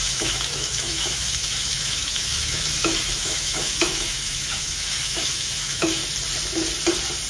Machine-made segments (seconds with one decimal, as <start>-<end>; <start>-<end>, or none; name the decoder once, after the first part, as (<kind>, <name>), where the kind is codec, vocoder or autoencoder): 0.0-6.0 (autoencoder, DAC-VAE)